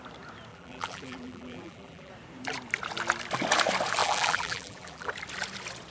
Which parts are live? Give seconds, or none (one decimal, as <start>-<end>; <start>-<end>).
0.0-0.5; 2.1-4.0; 5.1-5.9